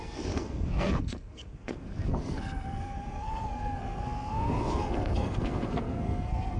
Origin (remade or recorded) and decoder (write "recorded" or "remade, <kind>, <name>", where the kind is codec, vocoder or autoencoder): remade, codec, SNAC